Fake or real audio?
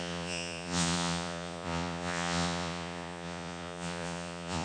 fake